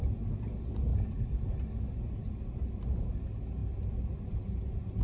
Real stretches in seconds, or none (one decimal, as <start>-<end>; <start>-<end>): 0.0-5.0